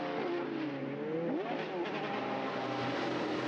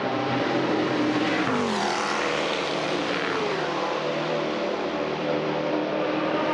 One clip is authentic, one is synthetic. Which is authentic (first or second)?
first